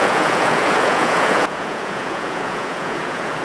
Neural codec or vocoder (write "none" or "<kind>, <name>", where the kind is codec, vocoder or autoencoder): vocoder, Vocos